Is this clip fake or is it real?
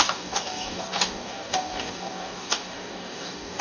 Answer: fake